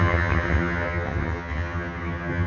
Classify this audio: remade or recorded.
remade